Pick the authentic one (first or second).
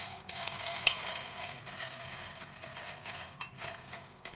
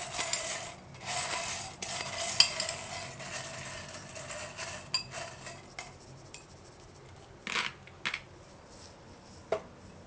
second